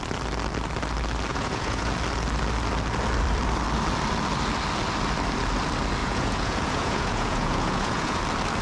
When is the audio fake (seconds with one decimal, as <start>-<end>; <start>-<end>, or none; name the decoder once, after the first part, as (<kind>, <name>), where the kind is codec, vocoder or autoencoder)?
1.3-1.9 (vocoder, Vocos); 6.0-8.2